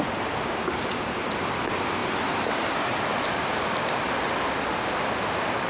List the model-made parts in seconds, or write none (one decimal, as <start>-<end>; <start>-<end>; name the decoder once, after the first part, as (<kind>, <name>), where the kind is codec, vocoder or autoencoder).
2.0-4.9 (vocoder, BigVGAN v2)